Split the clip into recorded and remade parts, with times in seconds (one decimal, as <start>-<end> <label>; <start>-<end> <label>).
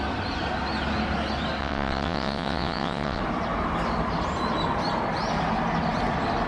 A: 0.0-1.6 recorded; 1.6-3.2 remade; 3.2-6.5 recorded